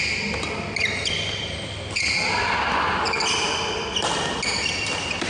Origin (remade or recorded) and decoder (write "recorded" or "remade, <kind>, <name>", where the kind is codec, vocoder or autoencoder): recorded